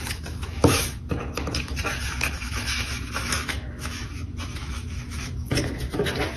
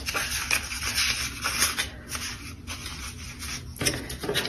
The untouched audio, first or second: second